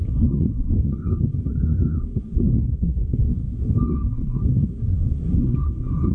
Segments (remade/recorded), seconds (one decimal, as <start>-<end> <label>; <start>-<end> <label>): 0.0-6.1 remade